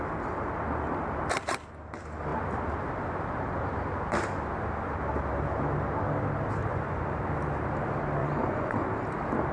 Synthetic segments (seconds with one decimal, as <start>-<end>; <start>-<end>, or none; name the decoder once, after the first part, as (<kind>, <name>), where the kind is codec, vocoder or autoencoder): 6.6-7.2 (vocoder, Vocos); 8.2-8.8

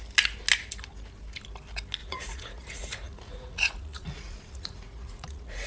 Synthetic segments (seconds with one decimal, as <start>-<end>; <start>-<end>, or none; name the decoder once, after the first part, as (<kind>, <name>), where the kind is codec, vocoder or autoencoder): 2.0-5.7 (vocoder, Vocos)

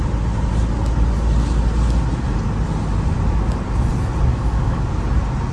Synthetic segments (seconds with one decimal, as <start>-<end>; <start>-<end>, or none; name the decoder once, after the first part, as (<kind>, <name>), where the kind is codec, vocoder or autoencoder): 4.3-5.0 (codec, DAC)

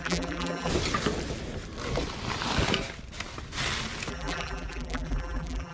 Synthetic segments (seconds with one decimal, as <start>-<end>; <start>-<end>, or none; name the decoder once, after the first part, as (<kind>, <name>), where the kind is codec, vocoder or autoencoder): 0.0-0.7 (vocoder, BigVGAN v2); 4.1-5.7

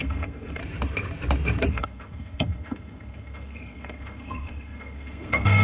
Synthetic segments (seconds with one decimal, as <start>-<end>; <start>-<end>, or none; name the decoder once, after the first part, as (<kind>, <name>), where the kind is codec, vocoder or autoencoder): 0.0-0.6 (codec, SNAC); 1.7-5.6

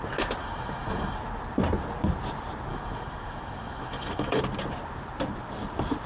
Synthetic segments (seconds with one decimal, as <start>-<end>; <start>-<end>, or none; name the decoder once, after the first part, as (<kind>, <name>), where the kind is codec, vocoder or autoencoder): 0.4-1.2 (autoencoder, DAC-VAE); 2.7-4.4

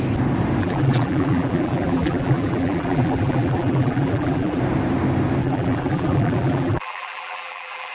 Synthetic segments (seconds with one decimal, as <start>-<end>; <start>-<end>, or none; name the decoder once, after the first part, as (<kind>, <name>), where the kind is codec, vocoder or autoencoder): 0.6-4.6 (vocoder, BigVGAN v2); 5.4-7.9